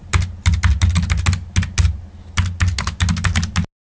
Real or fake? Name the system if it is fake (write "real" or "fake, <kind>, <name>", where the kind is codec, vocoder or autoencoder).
real